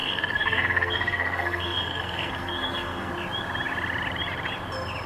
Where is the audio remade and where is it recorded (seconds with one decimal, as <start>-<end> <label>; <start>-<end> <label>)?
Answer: 0.0-3.1 remade; 3.1-5.1 recorded